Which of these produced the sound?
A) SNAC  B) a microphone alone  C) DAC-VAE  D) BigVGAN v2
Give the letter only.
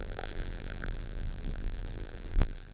D